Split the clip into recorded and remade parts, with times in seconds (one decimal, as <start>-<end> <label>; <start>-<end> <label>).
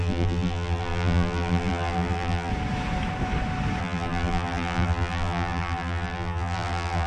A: 0.0-2.5 remade; 2.5-3.8 recorded; 3.8-7.1 remade